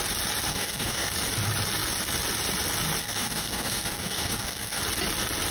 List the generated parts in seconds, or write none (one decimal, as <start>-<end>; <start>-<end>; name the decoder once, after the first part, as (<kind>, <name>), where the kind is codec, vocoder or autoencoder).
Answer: 0.5-1.1 (codec, DAC); 3.0-4.8